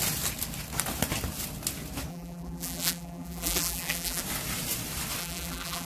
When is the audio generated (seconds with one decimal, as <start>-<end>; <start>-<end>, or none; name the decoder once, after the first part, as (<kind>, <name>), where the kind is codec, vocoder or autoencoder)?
2.1-4.2 (vocoder, BigVGAN v2); 5.2-5.9